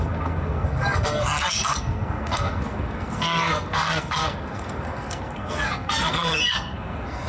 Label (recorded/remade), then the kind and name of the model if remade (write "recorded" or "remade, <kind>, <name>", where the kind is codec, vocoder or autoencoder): remade, codec, SNAC